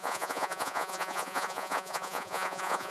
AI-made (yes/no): yes